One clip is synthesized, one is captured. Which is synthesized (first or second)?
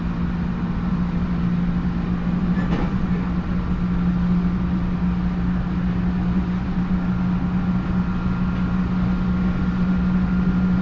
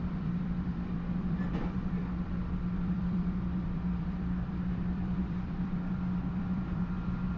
second